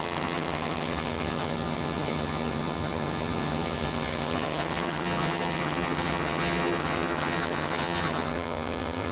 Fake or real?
fake